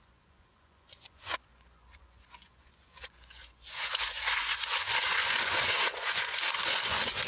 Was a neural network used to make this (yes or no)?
yes